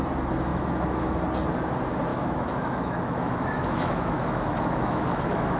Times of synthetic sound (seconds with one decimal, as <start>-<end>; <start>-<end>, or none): 0.5-1.2; 2.1-5.6

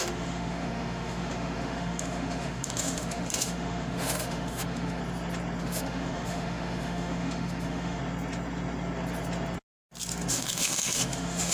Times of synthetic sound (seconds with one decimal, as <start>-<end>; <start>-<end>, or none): 0.0-5.0; 5.6-8.0; 10.3-11.5

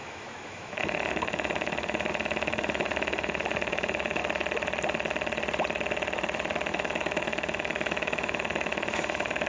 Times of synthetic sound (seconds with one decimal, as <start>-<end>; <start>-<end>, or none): 0.0-4.2; 6.7-9.5

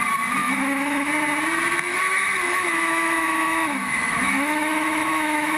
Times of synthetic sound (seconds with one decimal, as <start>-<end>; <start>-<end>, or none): 0.4-1.1; 1.9-5.6

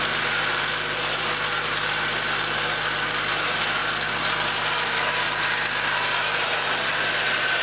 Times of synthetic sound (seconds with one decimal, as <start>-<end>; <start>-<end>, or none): none